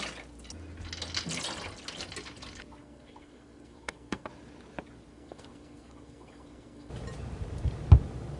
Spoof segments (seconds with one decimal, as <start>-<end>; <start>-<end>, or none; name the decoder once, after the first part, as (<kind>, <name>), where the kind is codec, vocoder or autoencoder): 2.8-4.3 (codec, SNAC); 5.1-6.9